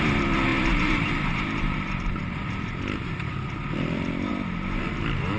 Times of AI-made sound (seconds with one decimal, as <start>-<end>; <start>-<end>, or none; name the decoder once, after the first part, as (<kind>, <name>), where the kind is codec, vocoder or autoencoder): 0.5-2.6 (vocoder, BigVGAN v2)